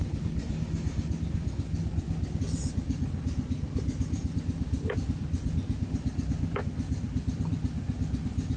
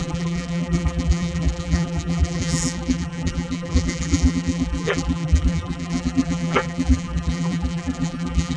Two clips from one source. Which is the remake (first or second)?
second